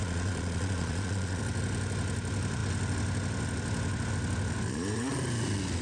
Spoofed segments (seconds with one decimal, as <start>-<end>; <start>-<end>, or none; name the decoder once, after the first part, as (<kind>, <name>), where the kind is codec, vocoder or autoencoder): 0.0-1.4 (vocoder, Vocos)